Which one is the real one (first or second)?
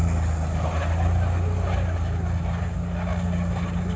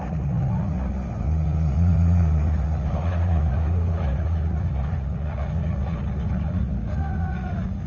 first